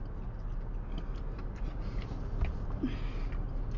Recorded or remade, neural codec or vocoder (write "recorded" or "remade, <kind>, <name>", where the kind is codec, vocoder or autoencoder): recorded